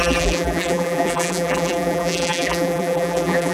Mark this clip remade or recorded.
remade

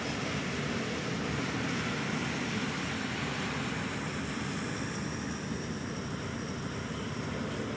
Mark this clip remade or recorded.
recorded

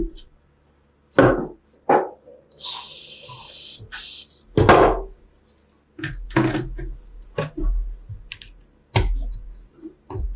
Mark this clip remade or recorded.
recorded